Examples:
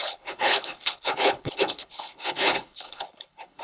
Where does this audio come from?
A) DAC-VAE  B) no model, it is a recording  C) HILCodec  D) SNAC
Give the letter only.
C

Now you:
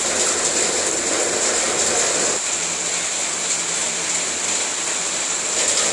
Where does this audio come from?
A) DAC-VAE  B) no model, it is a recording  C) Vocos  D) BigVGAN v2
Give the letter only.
B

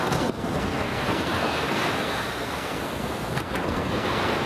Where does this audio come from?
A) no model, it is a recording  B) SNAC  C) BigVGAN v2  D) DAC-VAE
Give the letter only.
B